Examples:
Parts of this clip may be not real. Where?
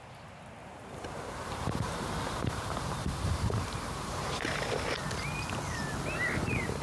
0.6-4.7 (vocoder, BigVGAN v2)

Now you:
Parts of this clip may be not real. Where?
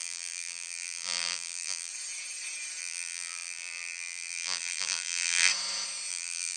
0.0-1.9 (vocoder, BigVGAN v2); 2.8-5.5; 6.1-6.6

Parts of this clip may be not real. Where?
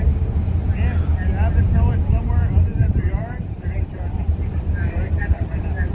0.0-1.1 (vocoder, BigVGAN v2); 1.6-5.9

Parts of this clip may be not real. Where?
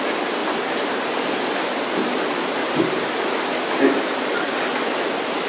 0.4-1.1 (vocoder, BigVGAN v2); 2.6-3.4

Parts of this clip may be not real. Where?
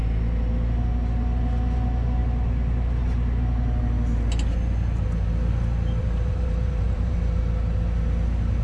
6.0-7.4 (vocoder, BigVGAN v2)